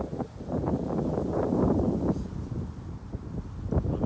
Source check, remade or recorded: recorded